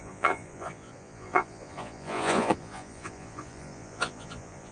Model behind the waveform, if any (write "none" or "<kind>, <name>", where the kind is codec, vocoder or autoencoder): vocoder, Vocos